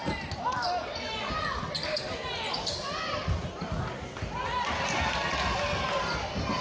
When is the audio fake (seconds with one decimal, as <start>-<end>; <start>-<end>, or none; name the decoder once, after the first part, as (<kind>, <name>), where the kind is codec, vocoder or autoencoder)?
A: none